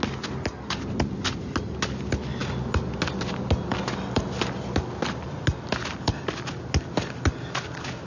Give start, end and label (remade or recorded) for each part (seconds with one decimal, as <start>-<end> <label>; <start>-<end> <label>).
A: 0.0-8.1 recorded